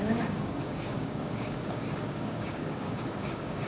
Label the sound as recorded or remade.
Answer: remade